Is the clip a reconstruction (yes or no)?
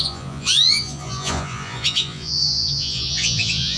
yes